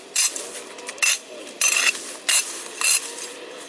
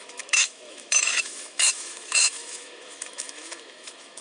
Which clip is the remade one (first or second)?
second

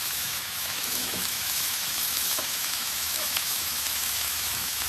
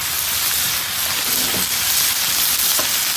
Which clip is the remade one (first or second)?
first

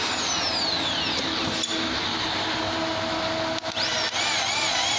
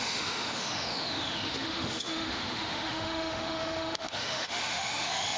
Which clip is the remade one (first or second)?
second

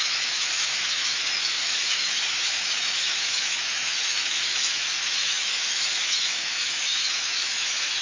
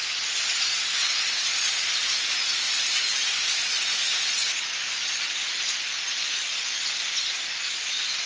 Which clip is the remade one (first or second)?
first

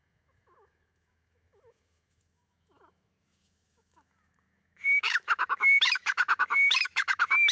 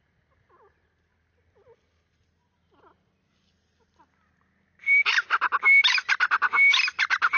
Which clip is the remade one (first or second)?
first